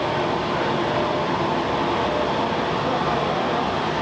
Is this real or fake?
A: real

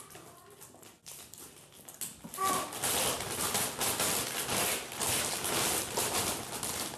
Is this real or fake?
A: real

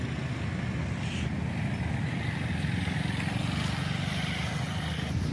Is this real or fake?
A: real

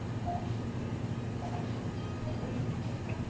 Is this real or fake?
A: real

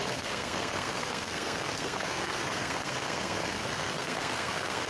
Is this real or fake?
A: fake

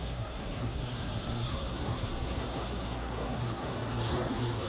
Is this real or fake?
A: fake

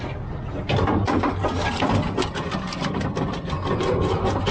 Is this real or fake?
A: real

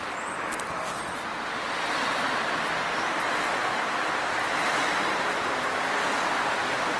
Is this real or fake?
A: real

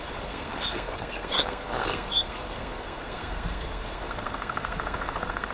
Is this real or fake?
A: fake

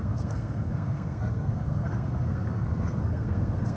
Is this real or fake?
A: fake